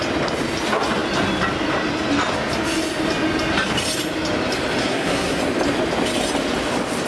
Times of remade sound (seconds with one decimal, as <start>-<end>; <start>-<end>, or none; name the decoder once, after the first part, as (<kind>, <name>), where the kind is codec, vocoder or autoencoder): 4.8-5.4 (codec, SNAC)